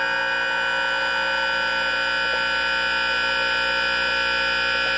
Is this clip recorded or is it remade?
recorded